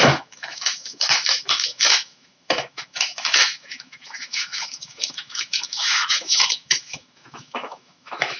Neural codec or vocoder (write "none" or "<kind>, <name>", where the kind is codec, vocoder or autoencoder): autoencoder, DAC-VAE